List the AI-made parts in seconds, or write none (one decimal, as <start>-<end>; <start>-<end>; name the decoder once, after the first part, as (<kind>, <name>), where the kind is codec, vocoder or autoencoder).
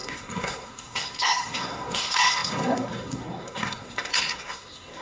0.0-5.0 (codec, SNAC)